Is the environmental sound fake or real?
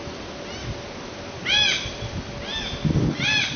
real